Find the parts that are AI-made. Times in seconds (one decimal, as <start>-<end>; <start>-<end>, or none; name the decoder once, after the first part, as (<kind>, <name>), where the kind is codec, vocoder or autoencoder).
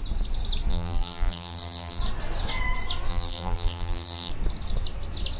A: 0.7-2.0 (vocoder, BigVGAN v2); 3.1-4.3